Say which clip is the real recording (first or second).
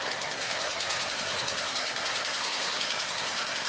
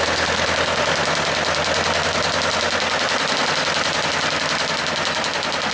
second